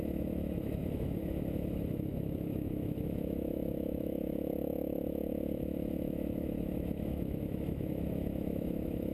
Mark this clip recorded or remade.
remade